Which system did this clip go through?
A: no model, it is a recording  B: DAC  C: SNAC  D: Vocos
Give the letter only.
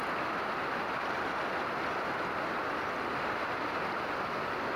A